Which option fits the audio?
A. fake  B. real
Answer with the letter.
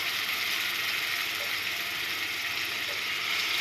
B